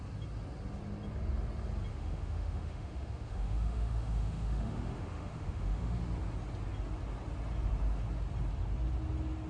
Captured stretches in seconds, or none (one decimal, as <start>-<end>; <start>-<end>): 0.0-1.9; 6.0-9.5